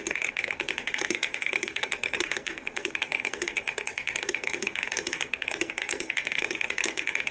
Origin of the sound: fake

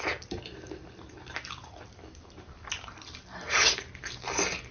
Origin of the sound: real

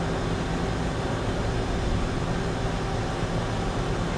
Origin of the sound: real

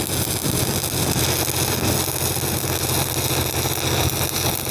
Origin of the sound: real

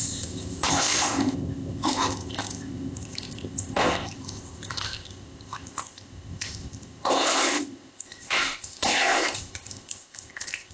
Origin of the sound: fake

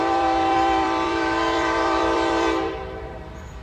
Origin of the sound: fake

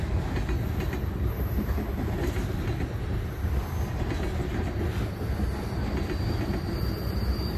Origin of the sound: real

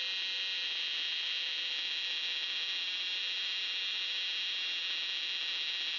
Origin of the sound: real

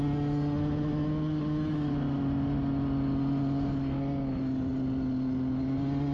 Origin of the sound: real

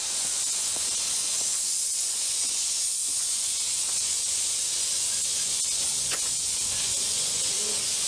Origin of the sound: fake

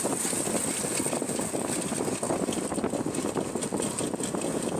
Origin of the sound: real